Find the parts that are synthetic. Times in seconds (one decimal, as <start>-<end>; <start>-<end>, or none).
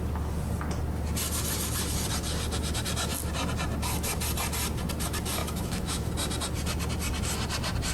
5.4-6.1